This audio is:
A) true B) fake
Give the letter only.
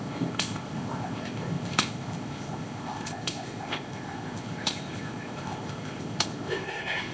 B